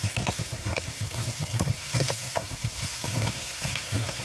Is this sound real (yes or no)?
no